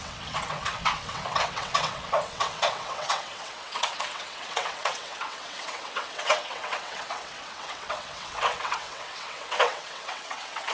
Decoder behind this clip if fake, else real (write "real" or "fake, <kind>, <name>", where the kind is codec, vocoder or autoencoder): fake, vocoder, WaveNeXt